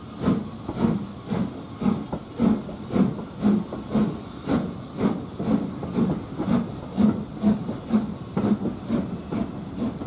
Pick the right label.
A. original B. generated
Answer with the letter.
A